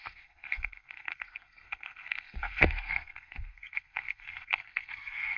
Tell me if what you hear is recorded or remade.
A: remade